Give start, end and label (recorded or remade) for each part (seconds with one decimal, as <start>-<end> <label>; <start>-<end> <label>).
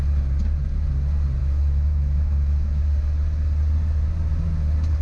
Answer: 0.0-1.4 recorded; 1.4-2.8 remade; 2.8-5.0 recorded